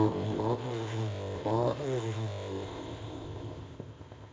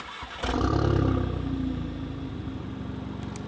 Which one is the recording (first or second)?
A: second